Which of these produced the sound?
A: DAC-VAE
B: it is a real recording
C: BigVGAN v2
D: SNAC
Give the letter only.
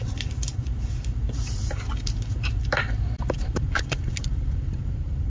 C